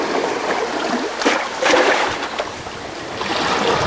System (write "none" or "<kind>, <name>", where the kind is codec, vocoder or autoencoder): vocoder, BigVGAN v2